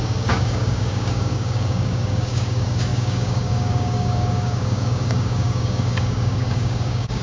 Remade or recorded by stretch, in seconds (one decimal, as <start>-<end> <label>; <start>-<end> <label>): 0.0-7.2 remade